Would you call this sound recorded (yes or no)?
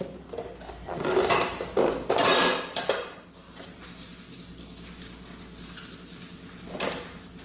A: yes